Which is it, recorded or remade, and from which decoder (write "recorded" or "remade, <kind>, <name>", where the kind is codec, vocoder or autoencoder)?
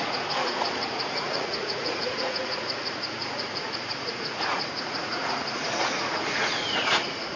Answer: remade, vocoder, Vocos